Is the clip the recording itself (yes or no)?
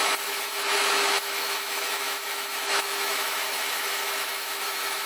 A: no